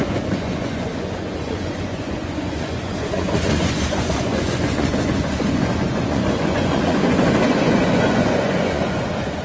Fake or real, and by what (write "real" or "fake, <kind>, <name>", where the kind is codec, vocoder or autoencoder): fake, vocoder, Vocos